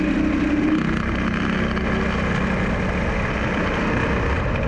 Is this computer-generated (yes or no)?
no